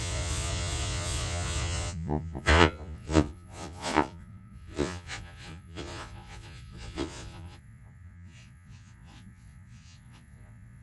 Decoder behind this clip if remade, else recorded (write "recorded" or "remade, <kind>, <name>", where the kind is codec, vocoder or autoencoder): remade, vocoder, Vocos